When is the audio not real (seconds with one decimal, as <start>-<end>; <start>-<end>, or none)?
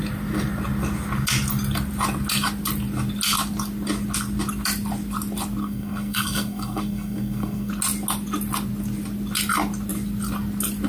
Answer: 5.6-7.7